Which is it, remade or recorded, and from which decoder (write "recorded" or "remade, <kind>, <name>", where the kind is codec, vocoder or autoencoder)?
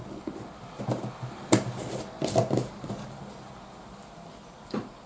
recorded